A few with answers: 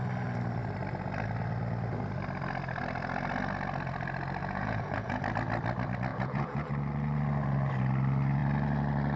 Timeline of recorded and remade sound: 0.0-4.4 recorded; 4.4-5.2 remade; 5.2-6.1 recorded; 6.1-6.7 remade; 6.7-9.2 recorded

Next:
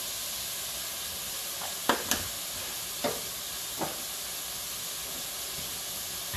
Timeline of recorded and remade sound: 0.0-0.9 recorded; 0.9-4.7 remade; 4.7-6.4 recorded